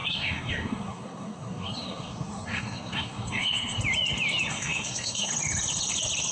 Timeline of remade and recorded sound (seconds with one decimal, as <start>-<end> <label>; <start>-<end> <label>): 0.0-3.8 remade; 3.8-4.5 recorded; 4.5-5.3 remade; 5.3-6.3 recorded